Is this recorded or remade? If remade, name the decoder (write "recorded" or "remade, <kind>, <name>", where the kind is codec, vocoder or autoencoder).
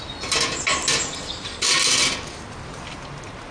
recorded